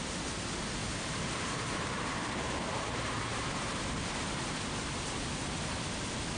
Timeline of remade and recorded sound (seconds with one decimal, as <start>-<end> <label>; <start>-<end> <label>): 0.0-0.8 recorded; 0.8-4.6 remade; 4.6-5.3 recorded; 5.3-6.4 remade